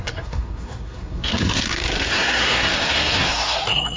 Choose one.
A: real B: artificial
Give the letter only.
B